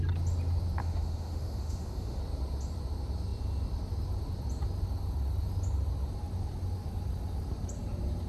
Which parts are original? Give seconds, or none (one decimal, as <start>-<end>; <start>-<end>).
0.0-0.8; 2.2-8.3